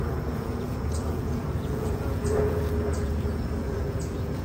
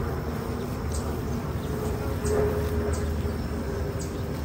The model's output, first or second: first